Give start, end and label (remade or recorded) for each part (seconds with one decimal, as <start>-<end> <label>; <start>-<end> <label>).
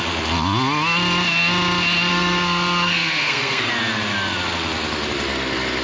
0.0-2.1 recorded; 2.1-3.7 remade; 3.7-5.8 recorded